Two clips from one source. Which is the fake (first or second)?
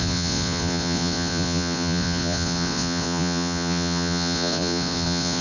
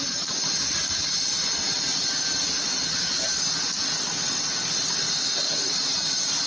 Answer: first